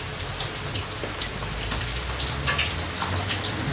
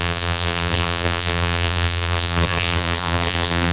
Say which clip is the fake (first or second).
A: second